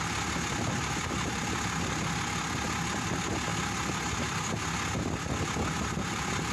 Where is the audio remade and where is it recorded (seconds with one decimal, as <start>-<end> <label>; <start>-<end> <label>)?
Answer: 0.0-6.5 recorded